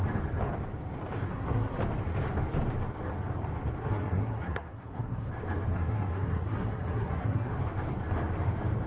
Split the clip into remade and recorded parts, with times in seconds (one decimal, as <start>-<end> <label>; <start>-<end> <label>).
0.0-1.3 recorded; 1.3-1.8 remade; 1.8-3.8 recorded; 3.8-5.3 remade; 5.3-5.7 recorded; 5.7-7.5 remade; 7.5-8.9 recorded